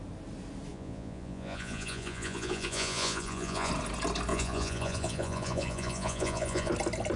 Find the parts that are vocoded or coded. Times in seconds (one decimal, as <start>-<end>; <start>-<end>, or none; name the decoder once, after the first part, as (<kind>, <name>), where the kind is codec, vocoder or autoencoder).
0.7-3.7 (vocoder, Vocos); 4.3-6.7